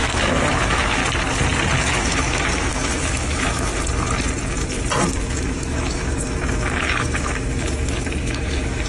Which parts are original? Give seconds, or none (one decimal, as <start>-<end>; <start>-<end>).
1.0-1.8; 3.7-5.2